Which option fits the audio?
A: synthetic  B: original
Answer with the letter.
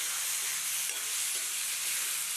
B